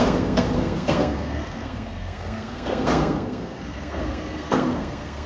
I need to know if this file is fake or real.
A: fake